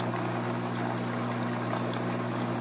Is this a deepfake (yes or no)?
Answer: no